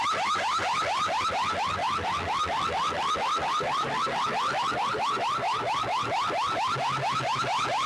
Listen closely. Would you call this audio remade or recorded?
recorded